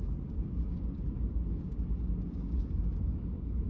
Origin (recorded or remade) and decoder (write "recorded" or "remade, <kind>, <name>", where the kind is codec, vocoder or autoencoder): remade, codec, DAC